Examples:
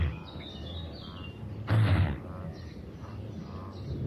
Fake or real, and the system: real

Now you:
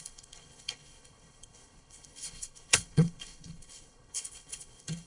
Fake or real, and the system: fake, codec, HILCodec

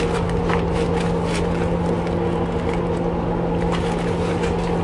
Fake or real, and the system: real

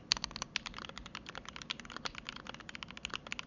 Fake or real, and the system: real